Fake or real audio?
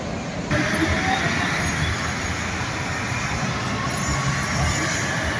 real